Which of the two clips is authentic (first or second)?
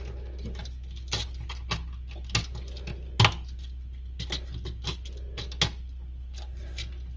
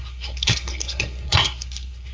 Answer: first